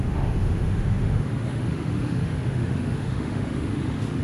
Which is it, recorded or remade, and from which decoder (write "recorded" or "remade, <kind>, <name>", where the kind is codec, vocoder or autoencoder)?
remade, autoencoder, DAC-VAE